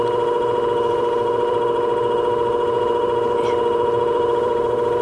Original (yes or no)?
no